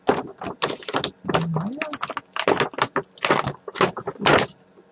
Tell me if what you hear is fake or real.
real